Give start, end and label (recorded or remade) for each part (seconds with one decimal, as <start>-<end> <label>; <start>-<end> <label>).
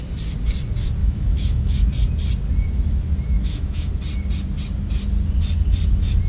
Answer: 0.0-1.0 recorded; 1.0-1.9 remade; 1.9-3.4 recorded; 3.4-3.9 remade; 3.9-6.3 recorded